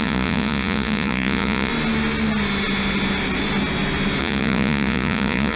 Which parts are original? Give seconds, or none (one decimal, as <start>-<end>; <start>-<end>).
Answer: 1.7-4.2